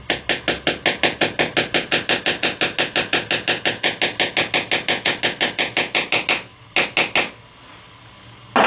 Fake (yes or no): no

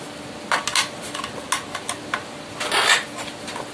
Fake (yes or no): no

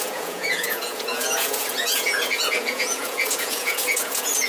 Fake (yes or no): yes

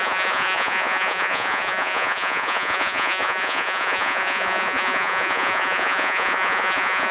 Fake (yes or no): yes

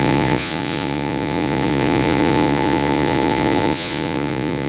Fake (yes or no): yes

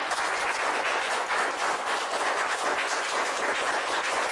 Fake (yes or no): yes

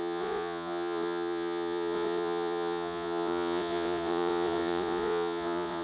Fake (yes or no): yes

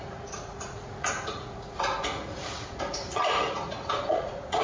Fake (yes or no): yes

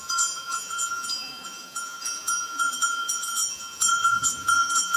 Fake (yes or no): yes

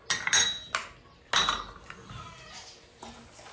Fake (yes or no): no